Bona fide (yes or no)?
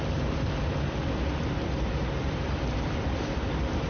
no